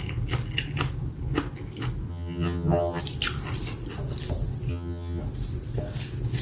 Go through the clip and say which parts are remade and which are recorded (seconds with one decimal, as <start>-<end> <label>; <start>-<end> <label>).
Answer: 0.0-2.1 recorded; 2.1-3.0 remade; 3.0-4.7 recorded; 4.7-5.2 remade; 5.2-6.4 recorded